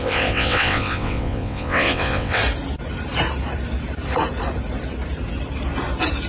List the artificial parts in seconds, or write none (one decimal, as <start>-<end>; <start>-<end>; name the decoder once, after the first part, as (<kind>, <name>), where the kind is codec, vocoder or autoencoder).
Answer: 0.0-2.4 (vocoder, WaveNeXt)